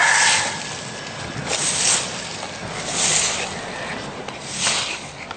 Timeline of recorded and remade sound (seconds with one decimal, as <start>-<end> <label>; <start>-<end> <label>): 0.0-5.4 recorded